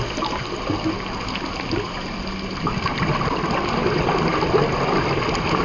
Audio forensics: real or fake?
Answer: real